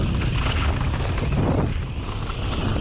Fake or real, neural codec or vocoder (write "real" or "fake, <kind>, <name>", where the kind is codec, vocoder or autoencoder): real